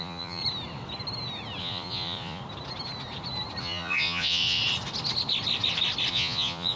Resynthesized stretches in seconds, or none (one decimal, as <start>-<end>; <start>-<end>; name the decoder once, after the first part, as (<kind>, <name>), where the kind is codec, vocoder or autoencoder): 0.0-0.4 (vocoder, Vocos); 1.6-2.4; 3.6-4.6; 6.1-6.8